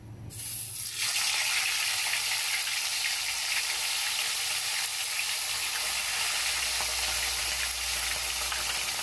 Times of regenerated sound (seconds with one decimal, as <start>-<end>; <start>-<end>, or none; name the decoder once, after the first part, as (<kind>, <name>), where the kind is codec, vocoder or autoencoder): none